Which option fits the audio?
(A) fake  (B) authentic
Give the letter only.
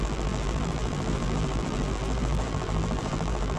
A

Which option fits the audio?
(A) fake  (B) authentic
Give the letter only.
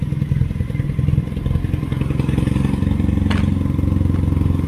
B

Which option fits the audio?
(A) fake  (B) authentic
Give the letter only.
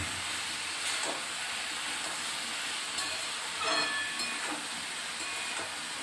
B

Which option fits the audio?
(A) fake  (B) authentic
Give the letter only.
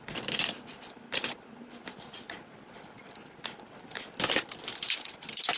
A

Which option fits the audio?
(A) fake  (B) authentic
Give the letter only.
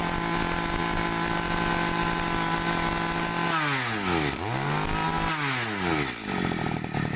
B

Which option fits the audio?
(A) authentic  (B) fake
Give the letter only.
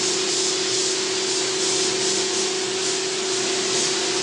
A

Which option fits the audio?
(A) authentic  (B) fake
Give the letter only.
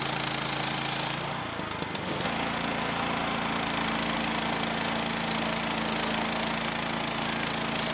A